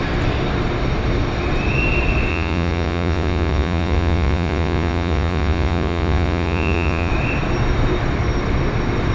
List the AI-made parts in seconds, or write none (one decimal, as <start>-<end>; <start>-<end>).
2.3-7.1